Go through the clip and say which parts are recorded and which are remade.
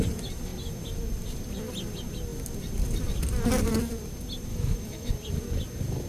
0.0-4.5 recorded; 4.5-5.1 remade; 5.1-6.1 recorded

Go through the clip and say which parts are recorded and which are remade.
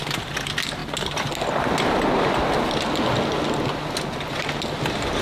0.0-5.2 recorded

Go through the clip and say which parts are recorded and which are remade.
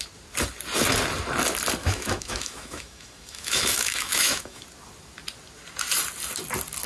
0.0-1.8 recorded; 1.8-4.6 remade; 4.6-6.9 recorded